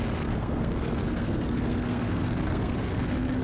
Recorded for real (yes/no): no